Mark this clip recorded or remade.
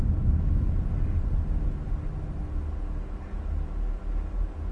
recorded